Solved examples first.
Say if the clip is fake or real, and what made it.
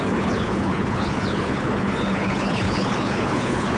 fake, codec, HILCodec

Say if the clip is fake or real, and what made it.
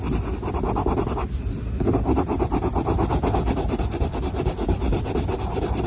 real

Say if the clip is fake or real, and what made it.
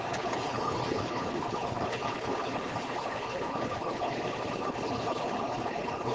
fake, codec, HILCodec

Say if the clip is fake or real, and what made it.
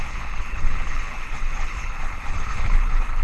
fake, codec, HILCodec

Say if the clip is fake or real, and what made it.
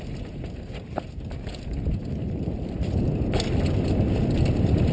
real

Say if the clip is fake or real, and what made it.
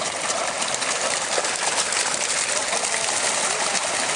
real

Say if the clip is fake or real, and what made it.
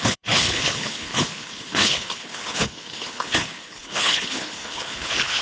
fake, codec, HILCodec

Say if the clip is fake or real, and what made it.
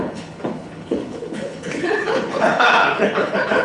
fake, codec, HILCodec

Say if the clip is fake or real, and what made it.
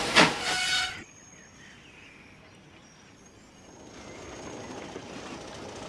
real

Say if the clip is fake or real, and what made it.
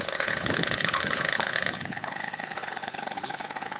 fake, codec, HILCodec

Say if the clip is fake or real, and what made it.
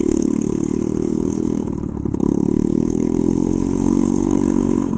fake, codec, HILCodec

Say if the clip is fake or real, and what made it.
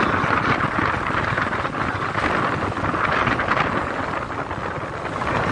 real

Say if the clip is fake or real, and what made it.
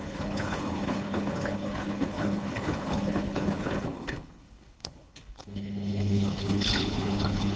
fake, codec, HILCodec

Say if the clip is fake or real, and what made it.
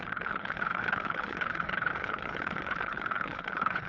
fake, codec, HILCodec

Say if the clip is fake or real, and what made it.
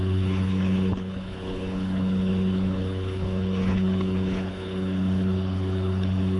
fake, codec, HILCodec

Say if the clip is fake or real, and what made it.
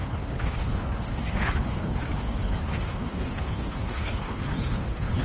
fake, codec, HILCodec